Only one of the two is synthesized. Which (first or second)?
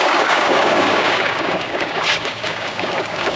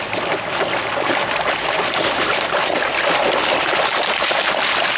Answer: first